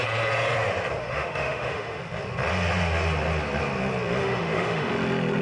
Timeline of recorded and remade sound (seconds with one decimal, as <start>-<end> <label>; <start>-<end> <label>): 0.0-1.0 recorded; 1.0-2.0 remade; 2.0-4.2 recorded; 4.2-4.9 remade; 4.9-5.4 recorded